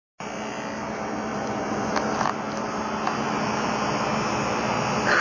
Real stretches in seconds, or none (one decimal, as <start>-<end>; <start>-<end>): 0.0-1.3; 1.9-5.2

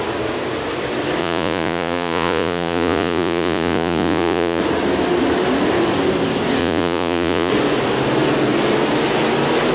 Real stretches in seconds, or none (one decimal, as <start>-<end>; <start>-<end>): 0.0-1.2; 4.6-6.6; 7.5-9.7

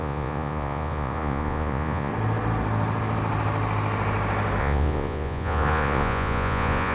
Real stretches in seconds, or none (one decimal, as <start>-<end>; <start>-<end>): 2.1-4.6

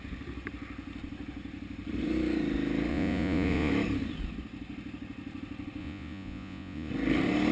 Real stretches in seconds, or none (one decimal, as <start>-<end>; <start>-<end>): 0.0-2.9; 3.7-5.8; 6.9-7.5